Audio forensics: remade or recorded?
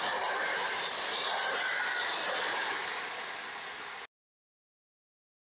recorded